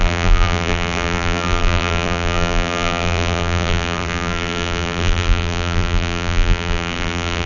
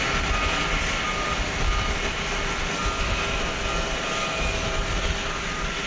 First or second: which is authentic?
second